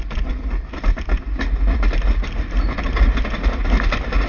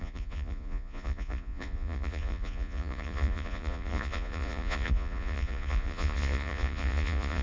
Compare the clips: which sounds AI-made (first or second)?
second